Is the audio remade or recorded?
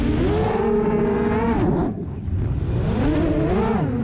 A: recorded